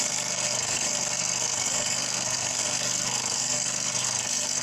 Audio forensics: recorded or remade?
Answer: remade